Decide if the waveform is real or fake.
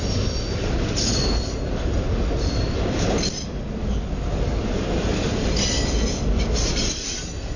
real